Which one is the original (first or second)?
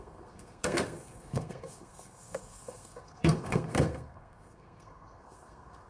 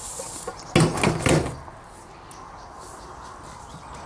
second